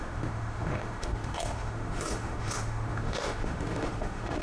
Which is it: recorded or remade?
remade